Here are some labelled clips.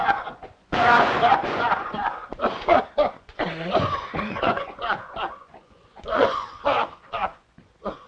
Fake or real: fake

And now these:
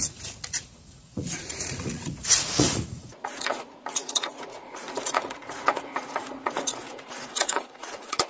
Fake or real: fake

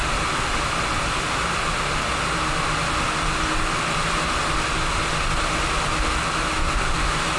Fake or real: real